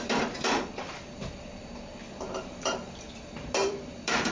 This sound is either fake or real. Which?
fake